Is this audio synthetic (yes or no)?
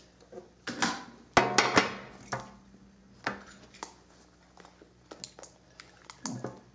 no